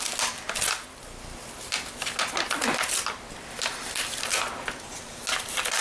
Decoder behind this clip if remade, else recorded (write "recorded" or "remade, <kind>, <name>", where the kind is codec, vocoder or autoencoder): recorded